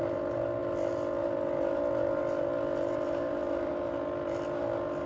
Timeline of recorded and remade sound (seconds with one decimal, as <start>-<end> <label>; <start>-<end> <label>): 0.0-5.1 recorded